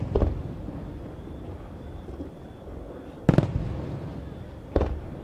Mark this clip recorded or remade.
recorded